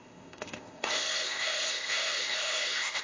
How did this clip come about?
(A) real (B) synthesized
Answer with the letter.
B